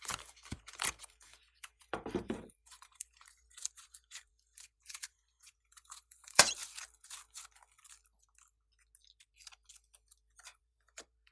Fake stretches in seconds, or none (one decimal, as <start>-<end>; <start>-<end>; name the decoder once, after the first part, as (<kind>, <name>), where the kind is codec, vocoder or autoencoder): 0.0-6.6 (vocoder, BigVGAN v2); 10.6-11.3